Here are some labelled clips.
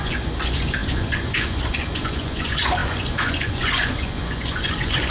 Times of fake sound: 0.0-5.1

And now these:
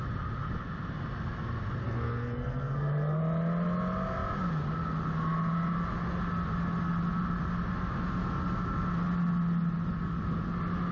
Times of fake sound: 1.8-3.2

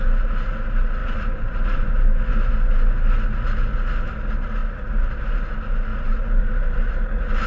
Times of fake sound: 1.0-1.9; 4.6-5.1; 5.9-6.9

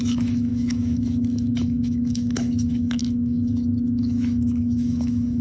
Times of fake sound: 0.0-5.4

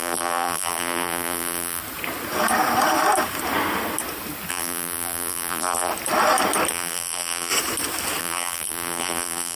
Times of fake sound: 0.0-1.8; 4.5-5.9; 6.7-7.5; 8.2-9.5

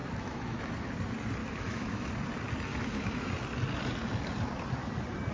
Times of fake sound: 0.0-0.6; 1.4-2.1; 2.7-3.3

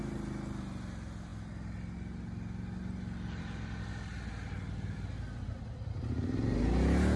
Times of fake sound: none